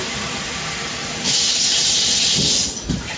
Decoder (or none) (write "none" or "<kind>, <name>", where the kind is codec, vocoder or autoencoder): vocoder, BigVGAN v2